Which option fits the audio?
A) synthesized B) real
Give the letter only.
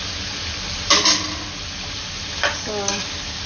B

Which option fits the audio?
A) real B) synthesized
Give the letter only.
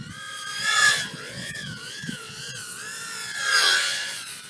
B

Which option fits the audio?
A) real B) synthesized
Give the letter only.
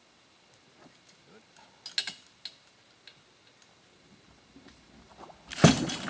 A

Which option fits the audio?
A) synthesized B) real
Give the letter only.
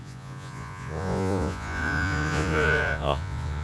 A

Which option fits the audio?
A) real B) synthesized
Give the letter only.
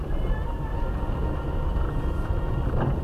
A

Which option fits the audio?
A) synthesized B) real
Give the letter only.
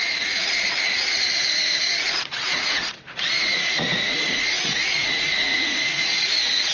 A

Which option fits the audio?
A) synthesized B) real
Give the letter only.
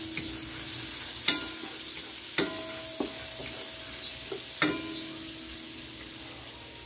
B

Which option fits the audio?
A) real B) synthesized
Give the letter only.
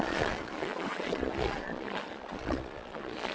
B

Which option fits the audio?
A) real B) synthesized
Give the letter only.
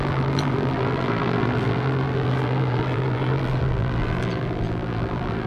B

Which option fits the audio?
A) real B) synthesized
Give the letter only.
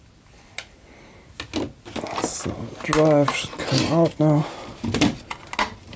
A